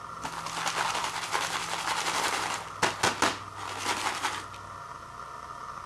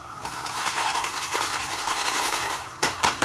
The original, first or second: first